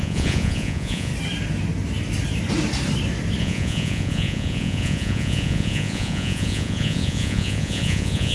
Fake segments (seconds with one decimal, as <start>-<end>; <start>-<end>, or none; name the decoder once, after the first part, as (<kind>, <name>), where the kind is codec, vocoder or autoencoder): 0.0-1.1 (vocoder, Vocos); 3.4-8.3